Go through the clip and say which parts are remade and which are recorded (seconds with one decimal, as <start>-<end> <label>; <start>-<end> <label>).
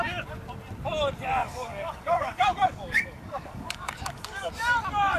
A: 0.0-1.4 recorded; 1.4-4.5 remade; 4.5-5.2 recorded